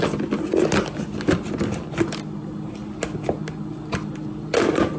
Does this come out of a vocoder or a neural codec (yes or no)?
no